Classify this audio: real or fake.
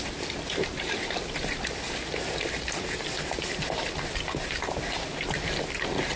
real